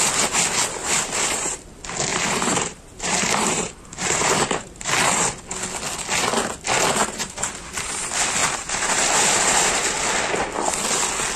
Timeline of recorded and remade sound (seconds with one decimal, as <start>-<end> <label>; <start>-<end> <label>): 0.0-0.8 recorded; 0.8-1.7 remade; 1.7-2.1 recorded; 2.1-4.9 remade; 4.9-7.0 recorded; 7.0-7.5 remade; 7.5-8.4 recorded; 8.4-9.8 remade; 9.8-11.4 recorded

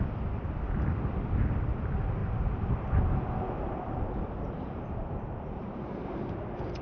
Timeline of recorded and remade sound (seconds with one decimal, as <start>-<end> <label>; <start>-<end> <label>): 0.0-2.2 recorded; 2.2-6.3 remade; 6.3-6.8 recorded